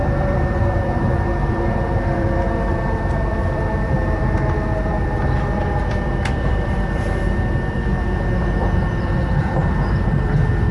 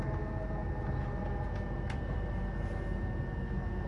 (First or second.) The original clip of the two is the second